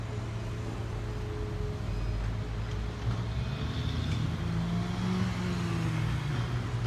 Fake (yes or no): no